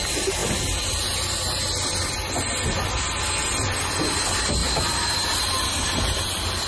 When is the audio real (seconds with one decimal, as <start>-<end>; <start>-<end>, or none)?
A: 0.0-4.6; 6.3-6.7